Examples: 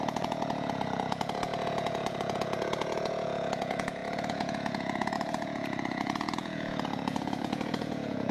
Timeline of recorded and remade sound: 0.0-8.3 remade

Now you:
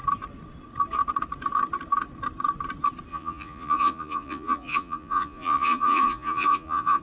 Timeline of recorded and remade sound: 0.0-3.1 recorded; 3.1-7.0 remade

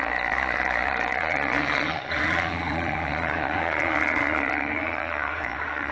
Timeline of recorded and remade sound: 0.0-5.9 remade

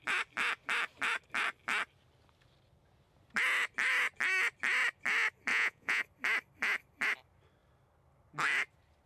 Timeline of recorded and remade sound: 0.0-5.5 recorded; 5.5-6.0 remade; 6.0-9.1 recorded